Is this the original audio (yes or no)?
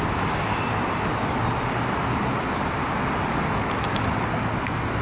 yes